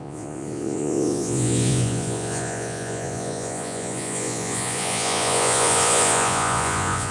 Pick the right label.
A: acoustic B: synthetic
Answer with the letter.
B